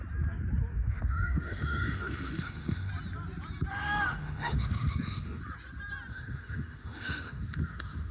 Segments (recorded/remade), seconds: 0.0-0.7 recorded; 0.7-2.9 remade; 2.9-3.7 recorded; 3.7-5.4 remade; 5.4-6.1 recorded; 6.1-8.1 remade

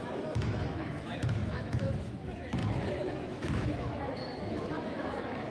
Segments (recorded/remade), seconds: 0.0-5.5 remade

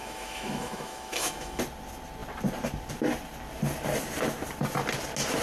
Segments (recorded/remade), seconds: 0.0-1.6 remade; 1.6-5.4 recorded

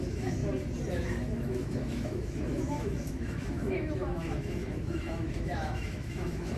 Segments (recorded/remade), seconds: 0.0-0.4 remade; 0.4-0.9 recorded; 0.9-6.6 remade

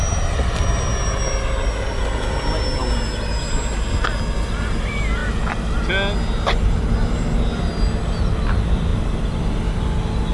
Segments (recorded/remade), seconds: 0.0-10.3 recorded